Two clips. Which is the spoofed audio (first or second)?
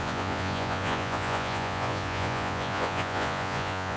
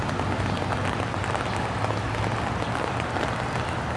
first